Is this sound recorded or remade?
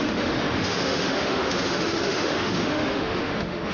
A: remade